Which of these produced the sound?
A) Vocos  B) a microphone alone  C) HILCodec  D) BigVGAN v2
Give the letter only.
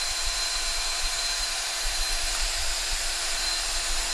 D